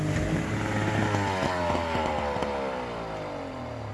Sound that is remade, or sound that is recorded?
recorded